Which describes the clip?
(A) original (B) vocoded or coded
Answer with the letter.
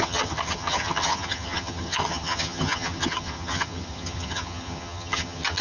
B